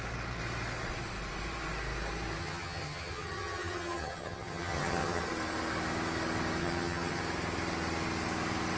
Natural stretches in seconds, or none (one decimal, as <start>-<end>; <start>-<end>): 0.0-2.4; 5.2-6.6; 7.2-8.8